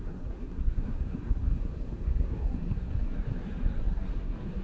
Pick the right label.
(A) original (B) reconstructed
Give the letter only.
B